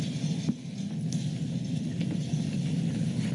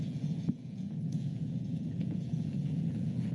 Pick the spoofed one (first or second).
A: second